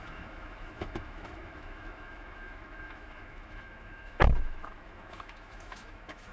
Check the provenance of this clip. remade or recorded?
remade